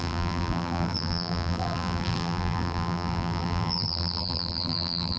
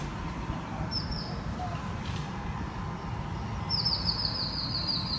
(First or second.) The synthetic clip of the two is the first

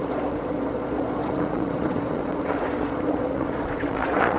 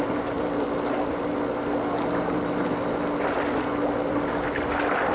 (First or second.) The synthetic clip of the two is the first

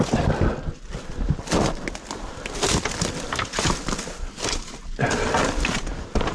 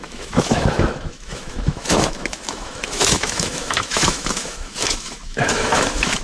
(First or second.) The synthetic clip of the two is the second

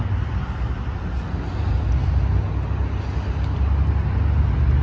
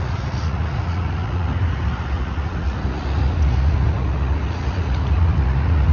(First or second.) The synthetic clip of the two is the second